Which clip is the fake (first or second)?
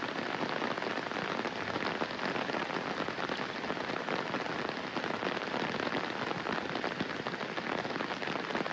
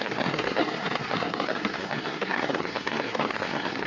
second